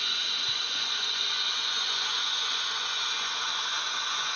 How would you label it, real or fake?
fake